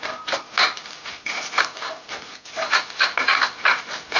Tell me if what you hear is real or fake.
real